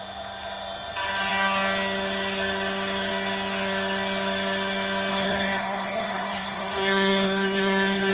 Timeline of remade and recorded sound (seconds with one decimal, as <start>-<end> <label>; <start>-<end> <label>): 0.0-5.1 recorded; 5.1-8.1 remade